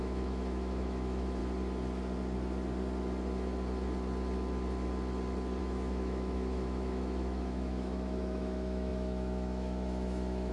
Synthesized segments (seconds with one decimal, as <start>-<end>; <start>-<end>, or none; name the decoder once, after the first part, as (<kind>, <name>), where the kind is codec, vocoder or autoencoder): 0.0-1.4 (autoencoder, DAC-VAE); 5.6-10.5